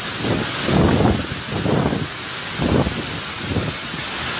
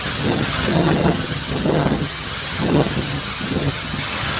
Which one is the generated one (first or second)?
second